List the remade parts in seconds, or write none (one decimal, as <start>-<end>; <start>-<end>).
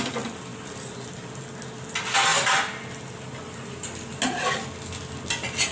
none